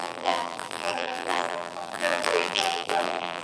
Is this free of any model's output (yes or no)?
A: no